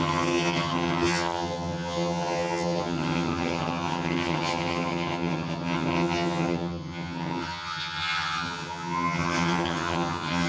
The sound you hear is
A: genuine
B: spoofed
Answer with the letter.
B